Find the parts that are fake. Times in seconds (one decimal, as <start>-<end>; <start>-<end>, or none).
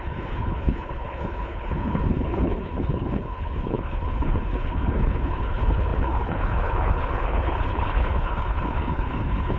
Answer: 0.0-9.6